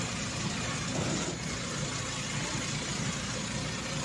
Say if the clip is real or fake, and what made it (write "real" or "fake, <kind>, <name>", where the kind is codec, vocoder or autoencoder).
real